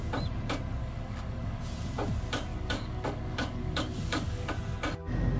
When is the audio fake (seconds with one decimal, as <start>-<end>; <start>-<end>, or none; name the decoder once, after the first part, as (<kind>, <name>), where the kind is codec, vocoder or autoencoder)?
0.8-1.6 (codec, DAC); 2.5-4.5